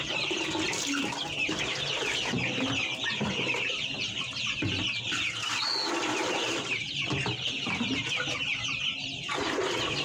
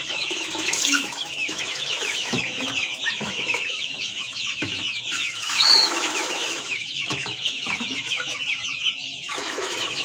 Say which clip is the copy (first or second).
second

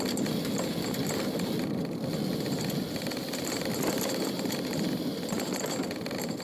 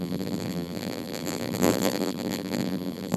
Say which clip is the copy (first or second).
second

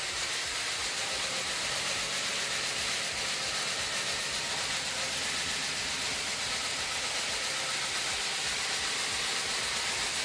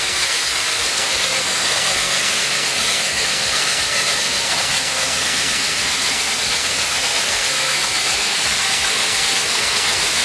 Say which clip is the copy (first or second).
second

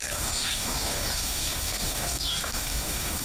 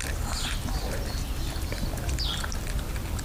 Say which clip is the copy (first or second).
first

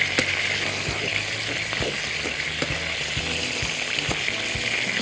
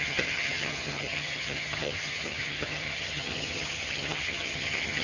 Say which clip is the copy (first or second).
second